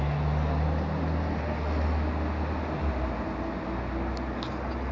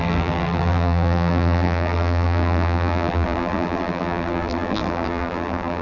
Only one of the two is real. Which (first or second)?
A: first